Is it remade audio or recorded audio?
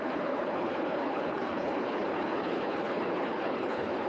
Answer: remade